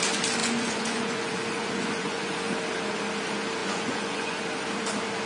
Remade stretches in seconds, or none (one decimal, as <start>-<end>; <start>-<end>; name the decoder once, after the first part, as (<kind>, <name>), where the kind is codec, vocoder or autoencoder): 0.4-2.5 (vocoder, Vocos); 3.6-4.4